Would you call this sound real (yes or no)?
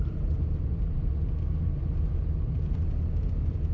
no